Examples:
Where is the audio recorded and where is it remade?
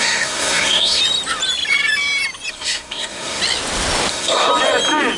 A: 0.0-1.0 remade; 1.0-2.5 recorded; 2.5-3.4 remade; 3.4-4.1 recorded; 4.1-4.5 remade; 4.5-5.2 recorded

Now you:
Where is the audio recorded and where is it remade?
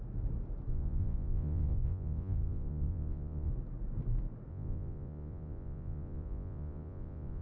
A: 0.0-0.7 recorded; 0.7-3.5 remade; 3.5-4.5 recorded; 4.5-7.4 remade